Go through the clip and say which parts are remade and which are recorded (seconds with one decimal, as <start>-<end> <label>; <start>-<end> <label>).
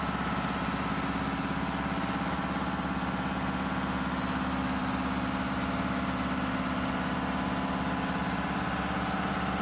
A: 0.0-9.6 recorded